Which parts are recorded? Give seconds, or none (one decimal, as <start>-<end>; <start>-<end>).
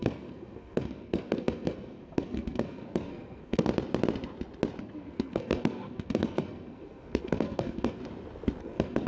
3.7-4.8; 8.0-8.6